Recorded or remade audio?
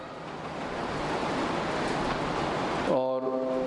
recorded